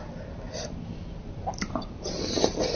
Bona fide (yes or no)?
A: yes